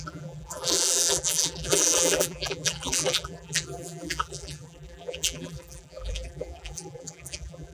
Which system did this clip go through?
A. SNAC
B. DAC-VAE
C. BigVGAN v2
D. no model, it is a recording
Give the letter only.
C